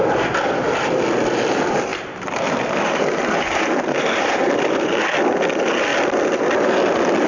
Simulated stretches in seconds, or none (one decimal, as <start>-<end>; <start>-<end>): 1.9-5.0